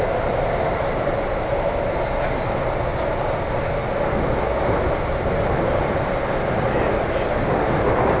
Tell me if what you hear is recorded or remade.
recorded